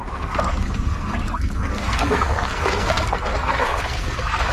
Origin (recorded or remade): remade